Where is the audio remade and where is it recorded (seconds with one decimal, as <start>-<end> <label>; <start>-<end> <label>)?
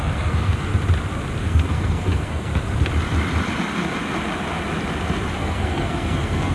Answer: 0.0-0.7 remade; 0.7-1.4 recorded; 1.4-2.5 remade; 2.5-5.4 recorded; 5.4-6.5 remade